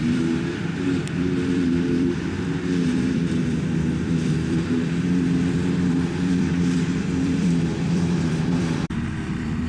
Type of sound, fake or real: fake